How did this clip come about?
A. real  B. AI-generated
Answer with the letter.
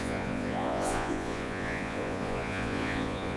B